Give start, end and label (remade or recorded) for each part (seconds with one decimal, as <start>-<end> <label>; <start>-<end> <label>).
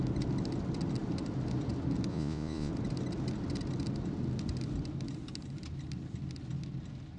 0.0-2.1 recorded; 2.1-2.7 remade; 2.7-7.2 recorded